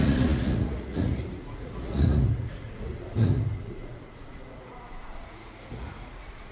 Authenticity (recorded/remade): remade